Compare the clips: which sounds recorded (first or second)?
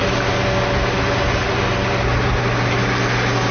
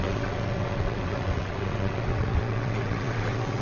first